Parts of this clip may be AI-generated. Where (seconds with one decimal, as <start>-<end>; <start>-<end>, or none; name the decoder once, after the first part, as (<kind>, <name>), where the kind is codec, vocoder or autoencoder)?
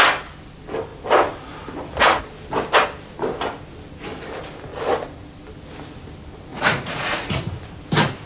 6.5-7.4 (vocoder, Vocos)